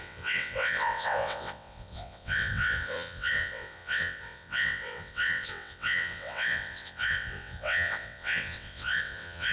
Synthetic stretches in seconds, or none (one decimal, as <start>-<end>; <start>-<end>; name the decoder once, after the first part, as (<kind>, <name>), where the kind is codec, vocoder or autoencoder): 0.0-9.5 (vocoder, WaveNeXt)